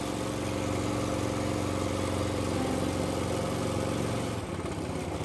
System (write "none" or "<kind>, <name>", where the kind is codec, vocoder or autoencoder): none